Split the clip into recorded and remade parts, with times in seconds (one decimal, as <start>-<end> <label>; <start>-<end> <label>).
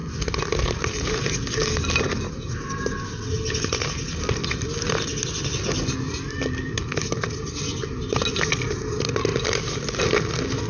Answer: 0.0-10.7 recorded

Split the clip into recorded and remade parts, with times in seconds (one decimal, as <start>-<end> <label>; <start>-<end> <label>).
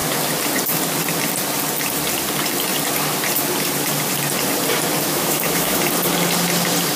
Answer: 0.0-5.1 recorded; 5.1-5.8 remade; 5.8-7.0 recorded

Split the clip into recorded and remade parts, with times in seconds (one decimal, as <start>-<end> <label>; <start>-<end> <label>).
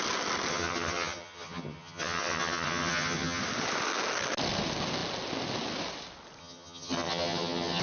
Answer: 0.0-0.5 recorded; 0.5-3.4 remade; 3.4-6.4 recorded; 6.4-7.8 remade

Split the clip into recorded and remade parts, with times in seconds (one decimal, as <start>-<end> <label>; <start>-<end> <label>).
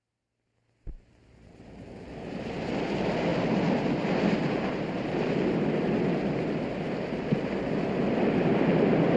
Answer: 0.0-9.2 recorded